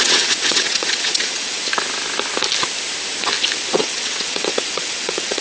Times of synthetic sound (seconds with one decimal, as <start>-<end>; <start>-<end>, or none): 0.0-1.7; 3.7-5.4

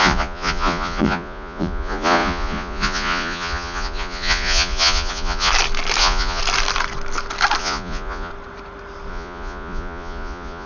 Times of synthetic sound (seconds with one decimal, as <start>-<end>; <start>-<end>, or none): 0.0-5.5; 6.0-6.4; 7.6-8.3; 9.1-10.7

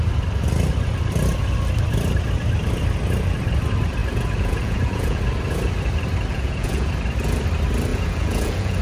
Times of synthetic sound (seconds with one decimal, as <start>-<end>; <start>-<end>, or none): 4.0-5.2; 6.3-6.9; 7.9-8.8

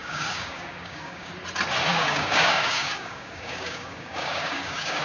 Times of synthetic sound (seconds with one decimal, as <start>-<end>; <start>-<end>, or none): 0.0-1.3; 1.9-5.0

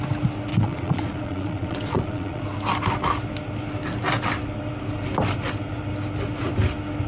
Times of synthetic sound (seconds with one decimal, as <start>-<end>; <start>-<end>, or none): 0.5-2.4